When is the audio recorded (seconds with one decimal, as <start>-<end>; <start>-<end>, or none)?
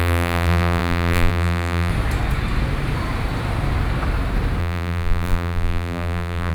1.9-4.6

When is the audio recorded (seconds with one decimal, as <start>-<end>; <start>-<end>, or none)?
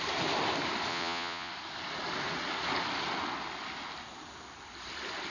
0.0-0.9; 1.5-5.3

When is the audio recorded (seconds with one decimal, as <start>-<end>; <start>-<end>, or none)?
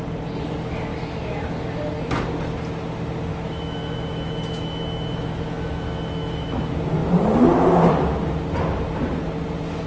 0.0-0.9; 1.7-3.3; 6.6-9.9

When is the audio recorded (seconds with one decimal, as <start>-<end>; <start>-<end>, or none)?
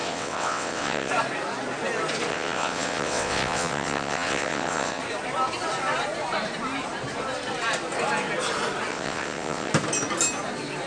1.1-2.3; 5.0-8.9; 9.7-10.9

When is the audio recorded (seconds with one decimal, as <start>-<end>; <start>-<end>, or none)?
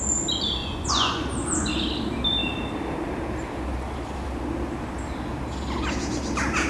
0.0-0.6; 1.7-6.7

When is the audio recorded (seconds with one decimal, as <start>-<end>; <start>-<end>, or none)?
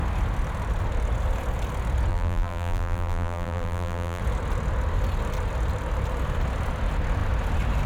0.0-2.1; 4.2-7.9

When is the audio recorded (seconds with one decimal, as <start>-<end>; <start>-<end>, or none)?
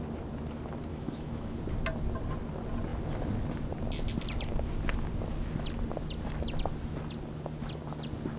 0.0-0.9; 1.6-8.4